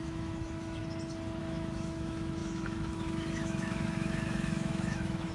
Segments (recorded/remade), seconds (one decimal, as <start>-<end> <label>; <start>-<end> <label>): 0.0-0.8 remade; 0.8-1.4 recorded; 1.4-5.3 remade